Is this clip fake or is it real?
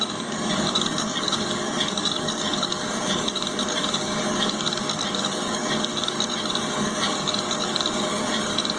fake